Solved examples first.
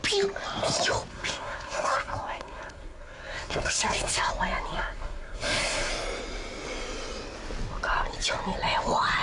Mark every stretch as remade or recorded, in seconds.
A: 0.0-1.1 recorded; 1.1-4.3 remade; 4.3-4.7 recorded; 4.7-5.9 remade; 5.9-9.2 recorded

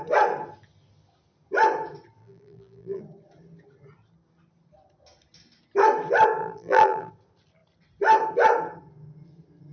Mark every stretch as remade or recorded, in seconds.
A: 0.0-2.2 recorded; 2.2-3.0 remade; 3.0-6.4 recorded; 6.4-7.1 remade; 7.1-9.7 recorded

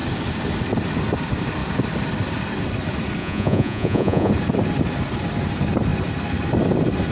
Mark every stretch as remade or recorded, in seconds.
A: 0.0-3.2 recorded; 3.2-4.3 remade; 4.3-7.1 recorded

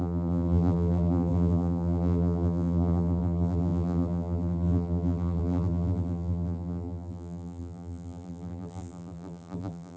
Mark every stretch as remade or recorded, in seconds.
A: 0.0-10.0 remade

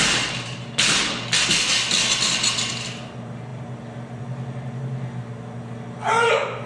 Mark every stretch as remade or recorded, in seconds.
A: 0.0-6.7 recorded

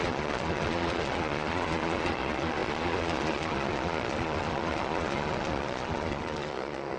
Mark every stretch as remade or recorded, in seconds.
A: 0.0-7.0 remade

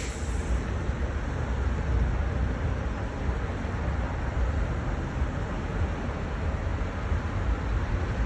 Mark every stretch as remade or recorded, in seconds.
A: 0.0-0.4 recorded; 0.4-5.4 remade; 5.4-8.3 recorded

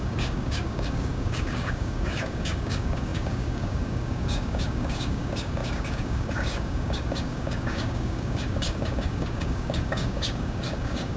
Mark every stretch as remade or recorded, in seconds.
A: 0.0-11.2 remade